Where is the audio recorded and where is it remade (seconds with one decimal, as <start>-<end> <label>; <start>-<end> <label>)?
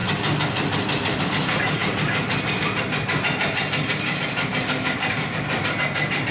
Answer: 0.0-6.3 recorded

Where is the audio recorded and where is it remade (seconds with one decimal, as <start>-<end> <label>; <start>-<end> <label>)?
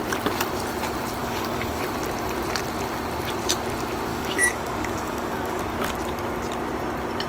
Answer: 0.0-1.2 recorded; 1.2-1.8 remade; 1.8-4.1 recorded; 4.1-5.6 remade; 5.6-7.3 recorded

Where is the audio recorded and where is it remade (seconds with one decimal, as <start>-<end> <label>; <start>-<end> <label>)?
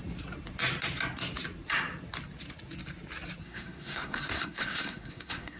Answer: 0.0-3.4 recorded; 3.4-5.6 remade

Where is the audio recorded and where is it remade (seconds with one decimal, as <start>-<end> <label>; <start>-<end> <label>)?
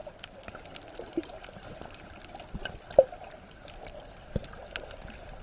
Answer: 0.0-5.4 recorded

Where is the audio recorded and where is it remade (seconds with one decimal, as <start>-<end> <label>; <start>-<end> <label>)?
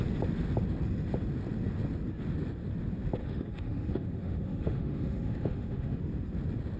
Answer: 0.0-3.2 recorded; 3.2-6.0 remade; 6.0-6.8 recorded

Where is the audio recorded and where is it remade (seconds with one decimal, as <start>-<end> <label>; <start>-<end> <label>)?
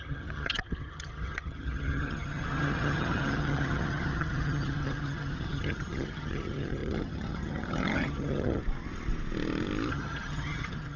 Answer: 0.0-8.6 remade; 8.6-9.9 recorded; 9.9-11.0 remade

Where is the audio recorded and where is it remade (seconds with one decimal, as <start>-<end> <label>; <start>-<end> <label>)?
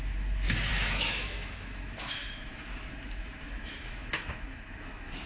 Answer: 0.0-5.3 remade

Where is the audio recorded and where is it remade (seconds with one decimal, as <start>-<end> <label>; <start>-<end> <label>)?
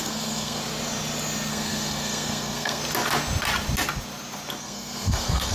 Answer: 0.0-0.6 remade; 0.6-1.5 recorded; 1.5-2.8 remade; 2.8-4.6 recorded; 4.6-5.5 remade